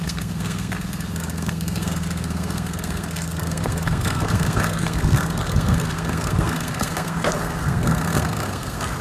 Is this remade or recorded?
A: remade